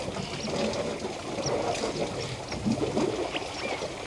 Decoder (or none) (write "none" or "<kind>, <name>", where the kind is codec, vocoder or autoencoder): none